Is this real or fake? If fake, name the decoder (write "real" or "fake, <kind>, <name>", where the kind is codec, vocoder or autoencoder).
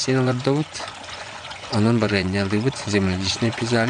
fake, vocoder, Vocos